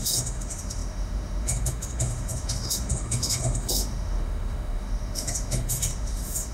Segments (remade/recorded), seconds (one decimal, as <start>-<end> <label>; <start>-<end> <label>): 0.0-6.5 remade